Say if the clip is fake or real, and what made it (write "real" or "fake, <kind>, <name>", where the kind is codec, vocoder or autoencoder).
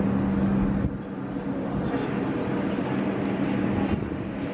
real